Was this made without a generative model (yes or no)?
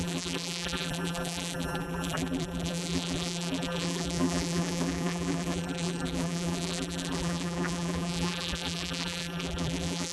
no